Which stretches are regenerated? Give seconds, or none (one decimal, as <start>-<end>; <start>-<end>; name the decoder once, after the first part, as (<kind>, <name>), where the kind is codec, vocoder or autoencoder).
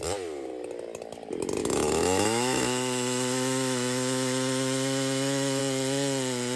1.6-5.6 (autoencoder, DAC-VAE)